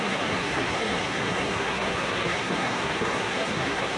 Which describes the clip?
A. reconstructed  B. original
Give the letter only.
A